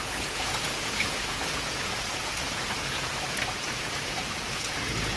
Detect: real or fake fake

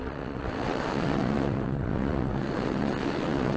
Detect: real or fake fake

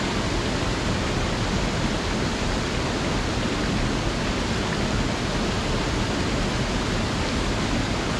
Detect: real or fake real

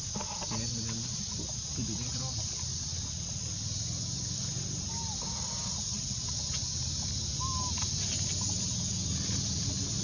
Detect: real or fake real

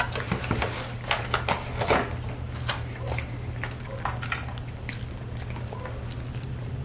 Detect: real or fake real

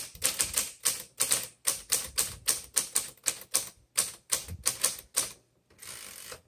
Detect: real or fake real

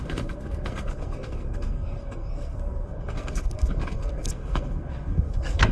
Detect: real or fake fake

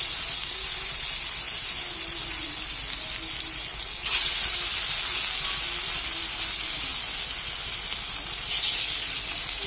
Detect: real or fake real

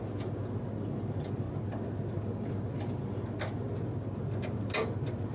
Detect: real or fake real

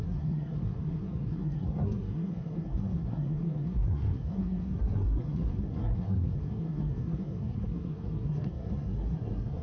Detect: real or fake fake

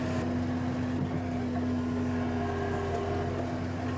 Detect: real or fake real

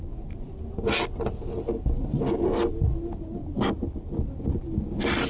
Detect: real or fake real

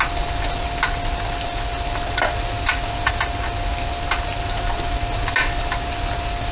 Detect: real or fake real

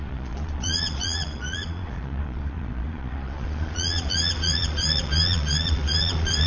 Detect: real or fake fake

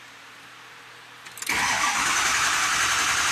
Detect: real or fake real